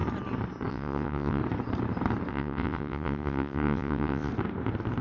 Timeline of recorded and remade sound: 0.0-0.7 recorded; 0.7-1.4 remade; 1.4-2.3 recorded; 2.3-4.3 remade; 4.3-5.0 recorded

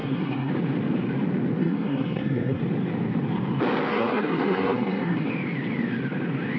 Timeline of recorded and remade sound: 0.0-0.5 remade; 0.5-1.6 recorded; 1.6-2.6 remade; 2.6-3.9 recorded; 3.9-5.3 remade; 5.3-6.6 recorded